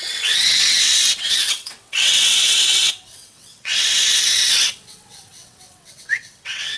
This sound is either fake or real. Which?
fake